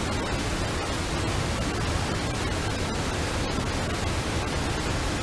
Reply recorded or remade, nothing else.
recorded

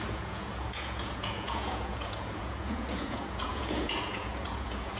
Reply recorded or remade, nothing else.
remade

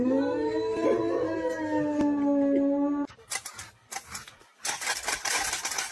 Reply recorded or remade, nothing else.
recorded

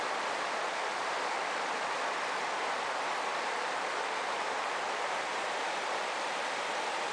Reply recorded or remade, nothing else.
remade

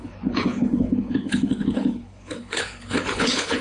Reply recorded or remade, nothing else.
remade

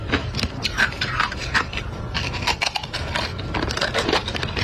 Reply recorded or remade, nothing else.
remade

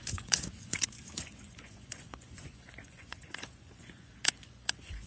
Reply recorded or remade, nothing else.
remade